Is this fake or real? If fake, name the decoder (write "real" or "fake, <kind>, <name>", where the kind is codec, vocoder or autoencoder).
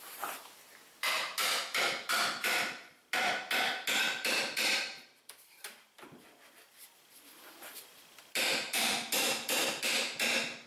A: fake, vocoder, BigVGAN v2